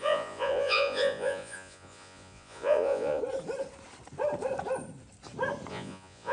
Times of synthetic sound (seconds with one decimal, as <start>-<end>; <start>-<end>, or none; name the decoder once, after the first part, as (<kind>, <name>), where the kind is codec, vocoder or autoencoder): 0.0-3.2 (vocoder, Vocos); 5.7-6.3